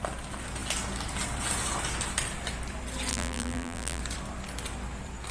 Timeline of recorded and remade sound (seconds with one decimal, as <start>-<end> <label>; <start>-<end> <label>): 0.0-3.1 recorded; 3.1-4.0 remade; 4.0-5.3 recorded